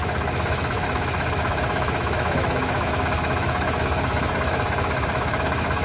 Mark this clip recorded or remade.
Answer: remade